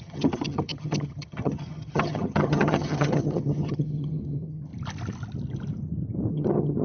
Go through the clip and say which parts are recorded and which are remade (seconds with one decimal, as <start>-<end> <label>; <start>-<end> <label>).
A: 0.0-4.7 remade; 4.7-6.3 recorded; 6.3-6.8 remade